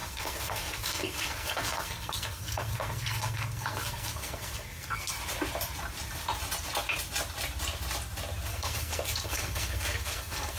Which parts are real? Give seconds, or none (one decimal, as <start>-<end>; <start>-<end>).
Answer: 5.1-8.5